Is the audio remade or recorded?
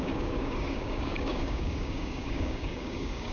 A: remade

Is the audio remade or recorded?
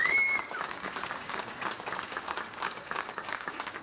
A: remade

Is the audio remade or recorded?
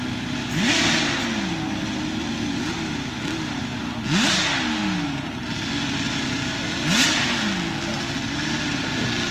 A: recorded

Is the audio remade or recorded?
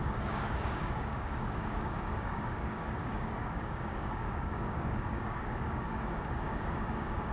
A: remade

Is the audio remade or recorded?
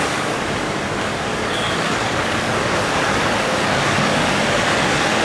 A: remade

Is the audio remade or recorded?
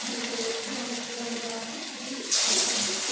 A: recorded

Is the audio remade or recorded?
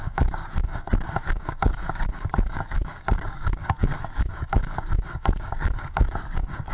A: remade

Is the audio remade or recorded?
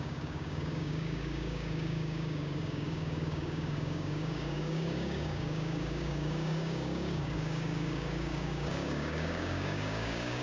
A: remade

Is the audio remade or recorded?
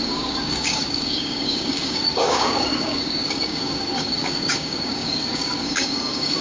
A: remade